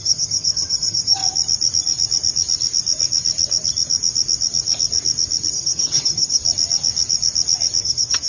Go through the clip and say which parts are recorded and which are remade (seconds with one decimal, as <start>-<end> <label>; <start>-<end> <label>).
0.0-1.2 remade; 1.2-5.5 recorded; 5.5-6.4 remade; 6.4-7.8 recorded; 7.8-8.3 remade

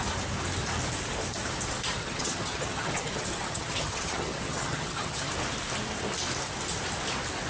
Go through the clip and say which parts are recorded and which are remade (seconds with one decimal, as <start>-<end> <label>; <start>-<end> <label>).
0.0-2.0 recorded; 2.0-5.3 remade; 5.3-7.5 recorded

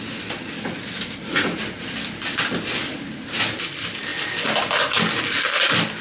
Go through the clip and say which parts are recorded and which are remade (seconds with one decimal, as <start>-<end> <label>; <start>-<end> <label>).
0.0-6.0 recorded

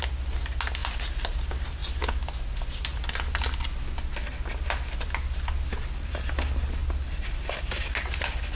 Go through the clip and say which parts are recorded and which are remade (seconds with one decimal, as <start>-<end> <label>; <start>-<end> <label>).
0.0-8.6 recorded

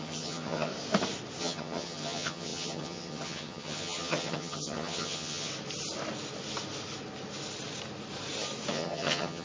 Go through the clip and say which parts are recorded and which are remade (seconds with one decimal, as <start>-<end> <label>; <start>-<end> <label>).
0.0-0.7 remade; 0.7-1.4 recorded; 1.4-5.5 remade; 5.5-8.7 recorded; 8.7-9.4 remade